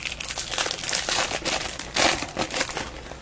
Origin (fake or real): real